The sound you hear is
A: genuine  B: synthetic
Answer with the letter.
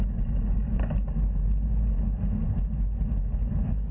A